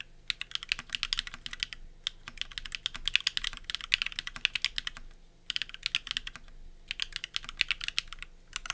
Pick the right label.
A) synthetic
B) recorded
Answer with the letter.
B